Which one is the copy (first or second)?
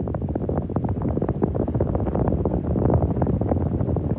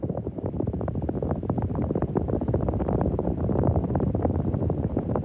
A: second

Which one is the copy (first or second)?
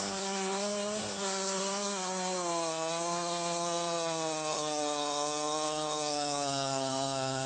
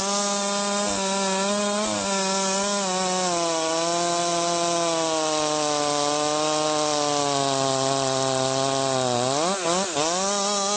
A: first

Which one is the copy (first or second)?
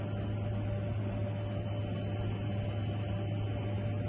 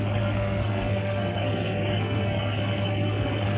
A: second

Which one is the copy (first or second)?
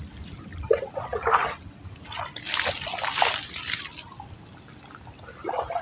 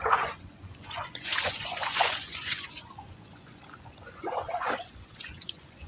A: second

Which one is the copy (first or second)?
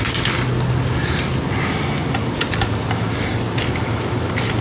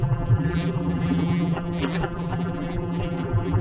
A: second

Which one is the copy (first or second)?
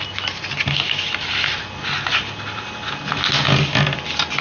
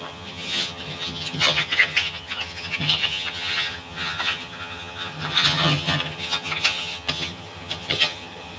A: second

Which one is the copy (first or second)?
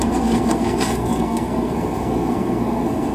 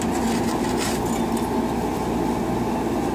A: first